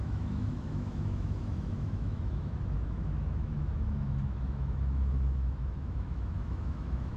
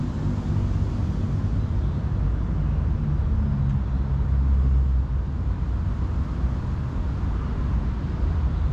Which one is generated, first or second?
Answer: first